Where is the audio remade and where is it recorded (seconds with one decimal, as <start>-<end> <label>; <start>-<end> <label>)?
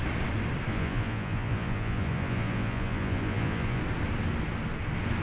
0.0-0.7 recorded; 0.7-3.8 remade; 3.8-5.2 recorded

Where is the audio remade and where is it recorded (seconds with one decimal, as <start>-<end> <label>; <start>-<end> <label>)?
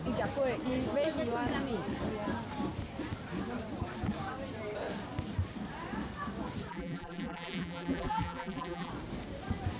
0.0-6.7 recorded; 6.7-8.9 remade; 8.9-9.8 recorded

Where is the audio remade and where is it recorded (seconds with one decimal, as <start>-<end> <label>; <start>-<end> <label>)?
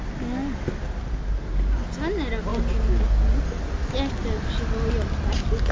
0.0-5.7 recorded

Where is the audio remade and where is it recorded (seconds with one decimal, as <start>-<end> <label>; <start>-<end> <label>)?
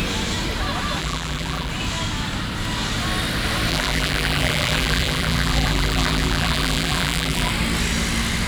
0.0-1.0 recorded; 1.0-1.7 remade; 1.7-3.7 recorded; 3.7-7.5 remade; 7.5-8.5 recorded